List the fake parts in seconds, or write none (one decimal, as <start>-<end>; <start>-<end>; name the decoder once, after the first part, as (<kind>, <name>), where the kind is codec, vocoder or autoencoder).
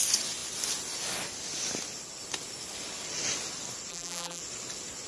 3.9-4.4 (vocoder, BigVGAN v2)